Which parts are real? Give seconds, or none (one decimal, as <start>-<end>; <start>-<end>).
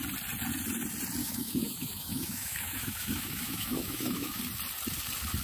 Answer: 0.0-1.2; 4.4-5.4